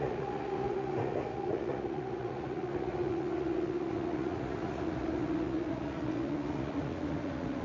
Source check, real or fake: fake